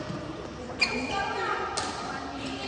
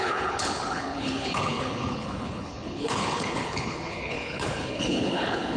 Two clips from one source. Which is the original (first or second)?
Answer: first